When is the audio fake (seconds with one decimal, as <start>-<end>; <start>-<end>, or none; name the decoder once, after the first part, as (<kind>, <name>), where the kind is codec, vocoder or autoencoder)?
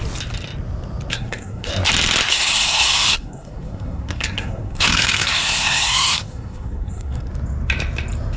1.1-1.7 (codec, SNAC); 2.3-7.3